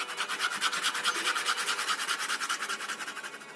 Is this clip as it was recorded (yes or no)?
yes